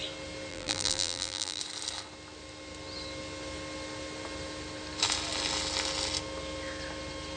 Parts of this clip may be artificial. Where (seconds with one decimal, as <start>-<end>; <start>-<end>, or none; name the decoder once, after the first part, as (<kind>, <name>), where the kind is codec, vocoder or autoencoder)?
0.5-1.6 (vocoder, BigVGAN v2)